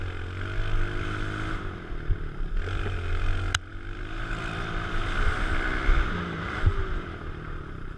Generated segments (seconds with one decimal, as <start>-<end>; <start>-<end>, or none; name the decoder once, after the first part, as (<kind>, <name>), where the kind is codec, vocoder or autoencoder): 3.7-6.1 (vocoder, BigVGAN v2)